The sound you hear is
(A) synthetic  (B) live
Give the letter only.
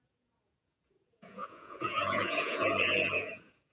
A